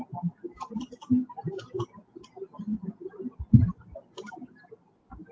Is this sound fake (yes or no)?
no